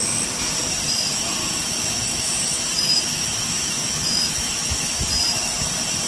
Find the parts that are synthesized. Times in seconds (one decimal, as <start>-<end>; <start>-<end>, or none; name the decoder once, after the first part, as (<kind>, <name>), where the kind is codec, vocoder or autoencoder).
1.4-5.1 (autoencoder, DAC-VAE)

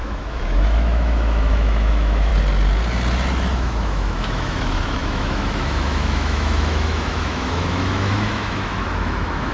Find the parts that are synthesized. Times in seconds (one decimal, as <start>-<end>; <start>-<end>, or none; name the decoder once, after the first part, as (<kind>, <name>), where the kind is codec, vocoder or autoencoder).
0.0-2.3 (autoencoder, DAC-VAE); 3.5-9.5

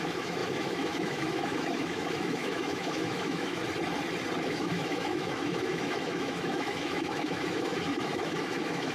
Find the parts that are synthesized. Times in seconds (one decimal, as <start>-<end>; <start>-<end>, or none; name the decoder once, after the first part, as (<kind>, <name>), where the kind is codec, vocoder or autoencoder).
0.0-3.6 (autoencoder, DAC-VAE); 4.4-8.9

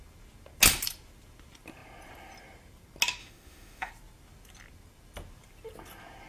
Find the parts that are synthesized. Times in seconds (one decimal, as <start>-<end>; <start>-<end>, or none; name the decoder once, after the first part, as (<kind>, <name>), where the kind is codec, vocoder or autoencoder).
3.2-3.9 (autoencoder, DAC-VAE)

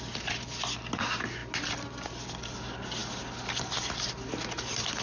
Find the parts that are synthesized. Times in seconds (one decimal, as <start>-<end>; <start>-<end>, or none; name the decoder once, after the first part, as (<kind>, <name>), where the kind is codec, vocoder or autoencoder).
none